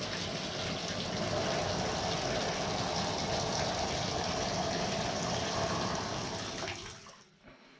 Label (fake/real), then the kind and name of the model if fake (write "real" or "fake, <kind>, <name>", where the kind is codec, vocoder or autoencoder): real